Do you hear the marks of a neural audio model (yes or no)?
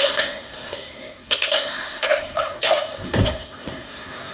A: yes